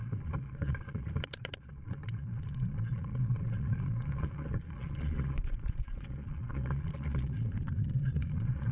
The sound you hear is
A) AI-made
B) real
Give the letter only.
A